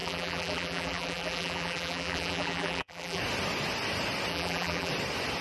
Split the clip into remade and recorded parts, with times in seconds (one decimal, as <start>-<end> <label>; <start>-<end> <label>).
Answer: 0.0-3.2 remade; 3.2-4.3 recorded; 4.3-4.9 remade; 4.9-5.4 recorded